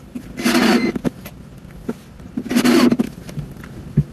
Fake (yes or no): no